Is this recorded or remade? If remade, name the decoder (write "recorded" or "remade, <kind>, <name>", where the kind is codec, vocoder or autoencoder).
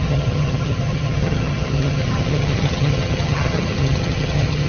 remade, vocoder, HiFi-GAN